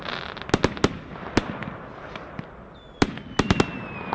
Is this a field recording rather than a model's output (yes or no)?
yes